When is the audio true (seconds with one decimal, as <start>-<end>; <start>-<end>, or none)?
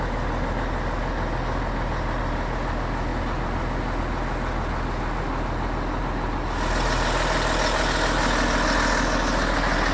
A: 0.0-9.9